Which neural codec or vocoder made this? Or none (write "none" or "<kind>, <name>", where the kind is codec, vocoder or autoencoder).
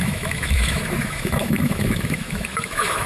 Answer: autoencoder, DAC-VAE